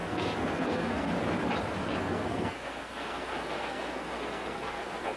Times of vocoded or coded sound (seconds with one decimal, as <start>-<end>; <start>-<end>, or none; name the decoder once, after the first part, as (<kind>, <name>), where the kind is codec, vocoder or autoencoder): 0.0-1.1 (codec, SNAC); 1.8-5.2